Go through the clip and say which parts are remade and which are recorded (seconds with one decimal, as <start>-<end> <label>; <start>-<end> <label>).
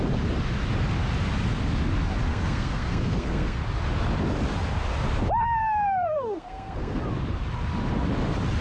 0.0-2.3 recorded; 2.3-3.6 remade; 3.6-5.6 recorded; 5.6-7.0 remade; 7.0-8.6 recorded